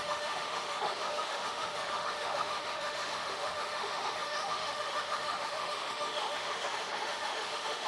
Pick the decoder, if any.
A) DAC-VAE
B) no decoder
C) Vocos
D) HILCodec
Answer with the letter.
A